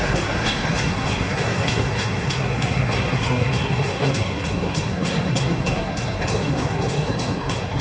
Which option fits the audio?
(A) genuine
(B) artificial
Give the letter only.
B